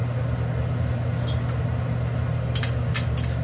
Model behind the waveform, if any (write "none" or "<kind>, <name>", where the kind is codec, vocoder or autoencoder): none